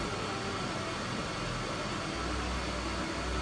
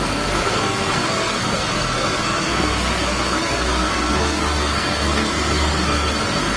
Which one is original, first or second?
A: first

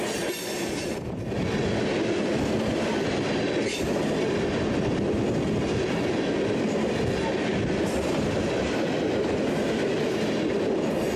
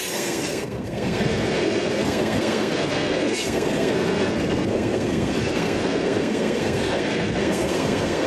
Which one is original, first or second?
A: first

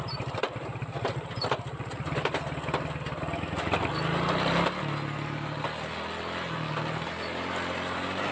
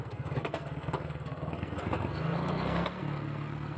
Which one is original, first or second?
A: first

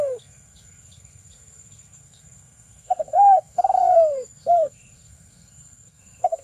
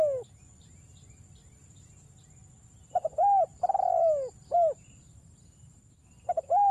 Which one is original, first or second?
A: second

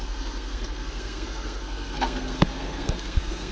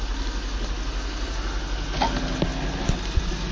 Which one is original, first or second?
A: second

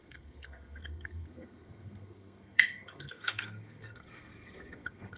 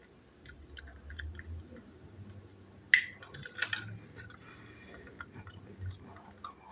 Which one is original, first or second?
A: second